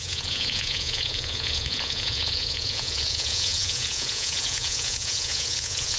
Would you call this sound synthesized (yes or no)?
yes